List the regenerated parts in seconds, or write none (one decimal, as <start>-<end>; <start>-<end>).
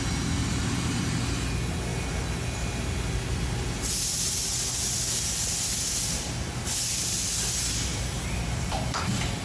0.4-1.0; 7.9-9.0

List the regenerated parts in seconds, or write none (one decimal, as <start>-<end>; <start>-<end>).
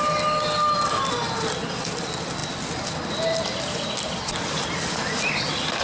none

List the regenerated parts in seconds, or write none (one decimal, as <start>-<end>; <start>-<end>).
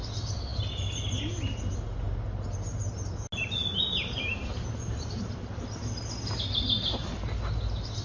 3.6-5.2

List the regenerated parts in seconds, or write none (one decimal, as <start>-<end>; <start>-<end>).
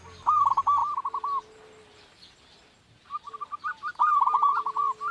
none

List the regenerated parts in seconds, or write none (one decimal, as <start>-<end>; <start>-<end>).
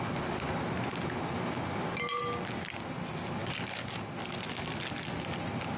none